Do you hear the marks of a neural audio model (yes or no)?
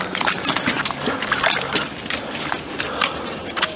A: yes